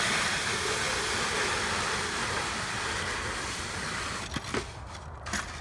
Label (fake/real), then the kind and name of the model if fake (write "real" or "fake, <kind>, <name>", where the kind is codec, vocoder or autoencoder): real